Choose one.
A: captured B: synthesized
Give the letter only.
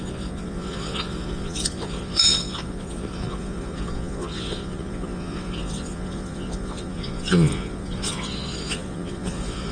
B